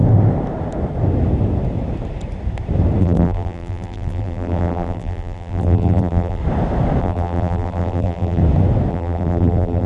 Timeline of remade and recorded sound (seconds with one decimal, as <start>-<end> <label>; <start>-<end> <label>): 0.0-3.0 recorded; 3.0-6.4 remade; 6.4-7.0 recorded; 7.0-8.4 remade; 8.4-8.9 recorded; 8.9-9.9 remade

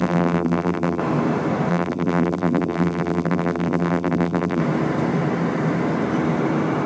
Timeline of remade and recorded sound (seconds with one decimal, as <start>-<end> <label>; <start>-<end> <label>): 0.0-1.0 remade; 1.0-1.7 recorded; 1.7-4.6 remade; 4.6-6.9 recorded

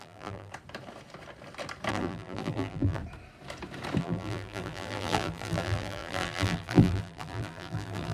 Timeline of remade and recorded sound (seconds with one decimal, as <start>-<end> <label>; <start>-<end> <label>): 0.0-0.5 remade; 0.5-1.9 recorded; 1.9-3.0 remade; 3.0-4.0 recorded; 4.0-8.1 remade

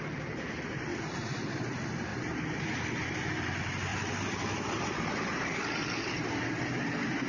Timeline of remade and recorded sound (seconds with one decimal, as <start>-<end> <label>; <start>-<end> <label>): 0.0-0.9 recorded; 0.9-1.5 remade; 1.5-2.1 recorded; 2.1-3.3 remade; 3.3-3.9 recorded; 3.9-5.6 remade; 5.6-7.3 recorded